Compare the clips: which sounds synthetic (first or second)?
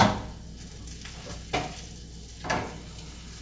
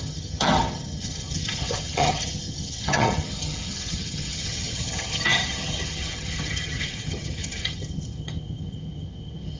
second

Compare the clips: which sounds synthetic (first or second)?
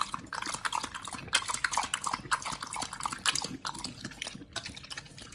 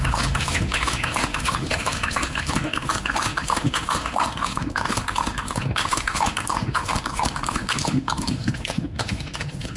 second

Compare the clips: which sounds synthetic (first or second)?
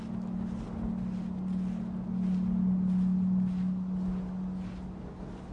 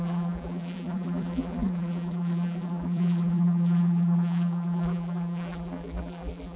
second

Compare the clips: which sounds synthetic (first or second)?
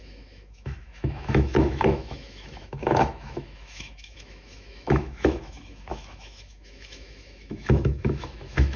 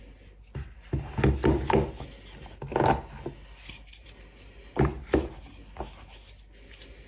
first